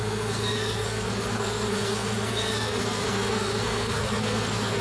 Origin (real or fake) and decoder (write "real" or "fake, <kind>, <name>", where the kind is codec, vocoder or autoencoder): fake, codec, SNAC